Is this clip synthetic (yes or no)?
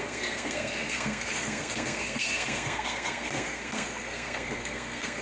yes